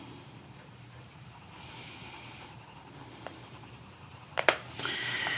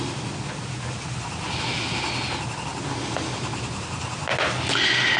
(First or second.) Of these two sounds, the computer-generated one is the first